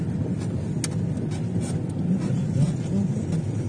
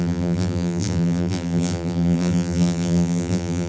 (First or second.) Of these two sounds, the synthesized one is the second